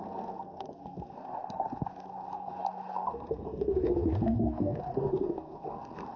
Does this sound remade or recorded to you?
remade